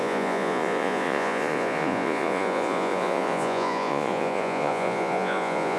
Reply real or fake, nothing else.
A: fake